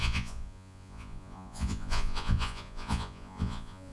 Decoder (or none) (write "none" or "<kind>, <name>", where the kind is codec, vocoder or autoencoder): vocoder, Vocos